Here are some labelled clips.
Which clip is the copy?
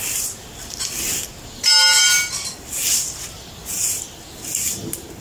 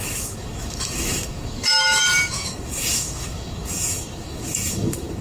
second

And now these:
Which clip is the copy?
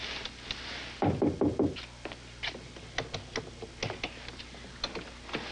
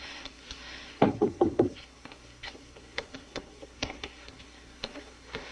second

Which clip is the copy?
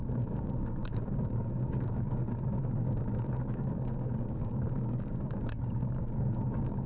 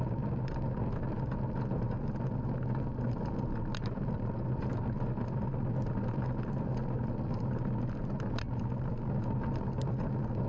first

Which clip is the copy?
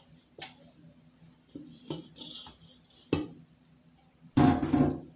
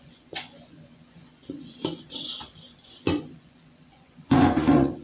second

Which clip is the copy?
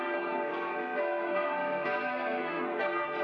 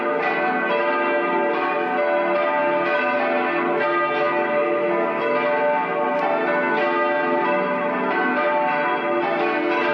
first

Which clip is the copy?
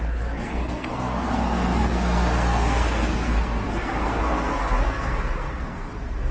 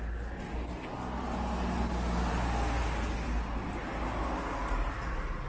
first